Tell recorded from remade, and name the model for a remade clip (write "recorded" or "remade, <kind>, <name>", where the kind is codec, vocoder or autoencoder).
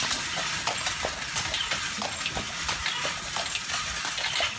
recorded